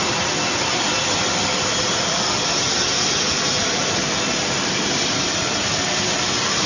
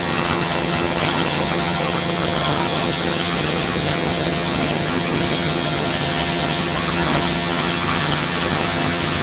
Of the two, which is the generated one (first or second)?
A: second